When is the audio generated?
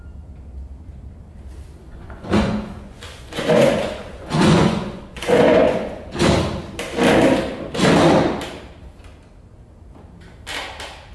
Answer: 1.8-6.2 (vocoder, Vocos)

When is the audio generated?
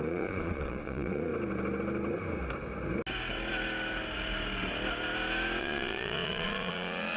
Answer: 0.0-1.3 (vocoder, Vocos); 5.6-7.2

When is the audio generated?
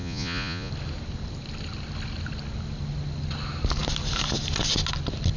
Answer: 0.0-0.7 (vocoder, Vocos)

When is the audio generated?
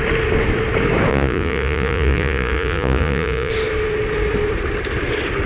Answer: 1.1-3.5 (vocoder, Vocos)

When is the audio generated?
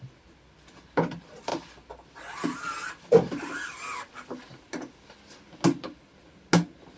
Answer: none